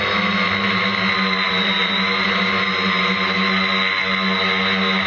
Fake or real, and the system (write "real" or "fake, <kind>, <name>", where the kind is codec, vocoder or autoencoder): real